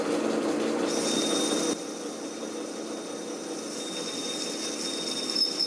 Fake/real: real